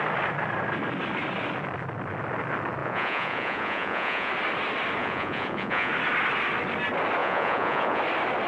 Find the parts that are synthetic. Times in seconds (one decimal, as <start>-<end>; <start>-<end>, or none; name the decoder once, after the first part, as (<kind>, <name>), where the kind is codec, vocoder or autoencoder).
2.8-4.3 (vocoder, Vocos); 5.0-5.9; 7.2-8.0